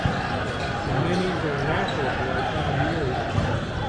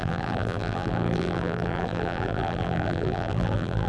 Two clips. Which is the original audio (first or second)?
first